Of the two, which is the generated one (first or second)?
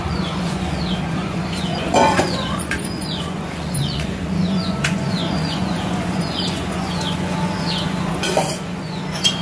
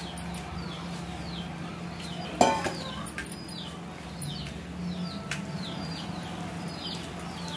first